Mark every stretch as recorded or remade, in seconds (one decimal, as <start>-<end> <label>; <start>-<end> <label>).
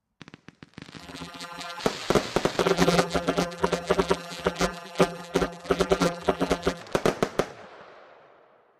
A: 0.0-1.0 recorded; 1.0-1.8 remade; 1.8-2.6 recorded; 2.6-6.8 remade; 6.8-8.8 recorded